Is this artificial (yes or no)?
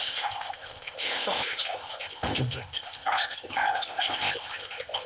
yes